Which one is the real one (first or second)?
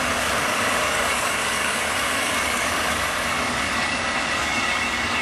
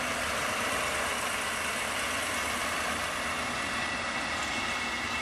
second